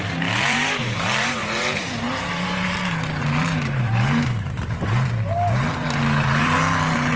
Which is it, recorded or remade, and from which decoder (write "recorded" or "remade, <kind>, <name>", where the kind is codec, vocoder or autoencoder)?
remade, vocoder, BigVGAN v2